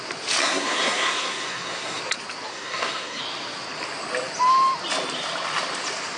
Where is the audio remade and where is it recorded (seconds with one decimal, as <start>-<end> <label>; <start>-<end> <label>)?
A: 0.0-0.4 recorded; 0.4-2.0 remade; 2.0-2.5 recorded; 2.5-3.2 remade; 3.2-6.2 recorded

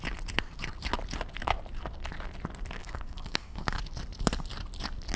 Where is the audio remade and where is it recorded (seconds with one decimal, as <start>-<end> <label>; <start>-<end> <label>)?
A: 0.0-2.8 recorded; 2.8-3.8 remade; 3.8-5.2 recorded